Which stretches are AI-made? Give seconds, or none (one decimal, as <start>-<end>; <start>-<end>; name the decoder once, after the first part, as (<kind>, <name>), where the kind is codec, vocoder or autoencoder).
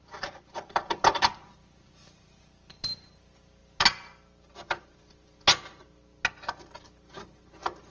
none